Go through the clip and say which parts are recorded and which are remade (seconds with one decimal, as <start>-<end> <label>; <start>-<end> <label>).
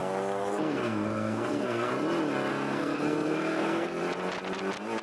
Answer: 0.0-1.9 remade; 1.9-2.5 recorded; 2.5-4.0 remade; 4.0-5.0 recorded